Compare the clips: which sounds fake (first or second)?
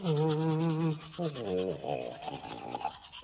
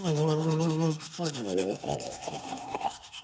second